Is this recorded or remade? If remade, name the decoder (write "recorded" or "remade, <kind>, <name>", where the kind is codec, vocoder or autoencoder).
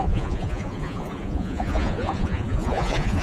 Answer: remade, vocoder, Vocos